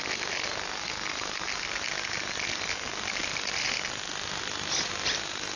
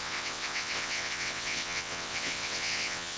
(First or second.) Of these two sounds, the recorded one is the first